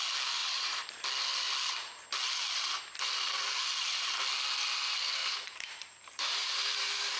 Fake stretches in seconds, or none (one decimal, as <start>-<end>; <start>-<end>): 5.2-6.8